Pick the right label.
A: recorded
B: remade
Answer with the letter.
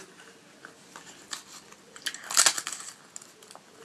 A